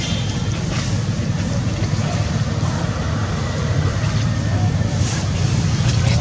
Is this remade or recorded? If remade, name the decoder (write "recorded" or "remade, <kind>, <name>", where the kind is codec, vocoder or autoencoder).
recorded